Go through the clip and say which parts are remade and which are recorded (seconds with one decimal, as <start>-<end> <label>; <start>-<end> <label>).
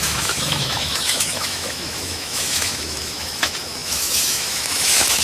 0.0-5.2 remade